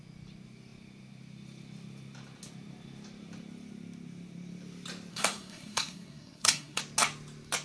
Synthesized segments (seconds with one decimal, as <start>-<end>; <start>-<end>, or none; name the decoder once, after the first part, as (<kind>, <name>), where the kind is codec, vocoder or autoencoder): 5.1-6.8 (codec, SNAC)